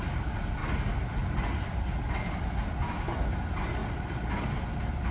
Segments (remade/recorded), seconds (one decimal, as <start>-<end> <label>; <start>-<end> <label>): 0.0-5.1 recorded